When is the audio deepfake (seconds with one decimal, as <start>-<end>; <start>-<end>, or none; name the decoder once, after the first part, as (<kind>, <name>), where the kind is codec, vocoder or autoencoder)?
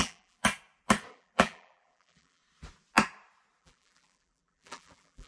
0.0-0.4 (vocoder, BigVGAN v2); 1.1-2.4; 3.6-5.3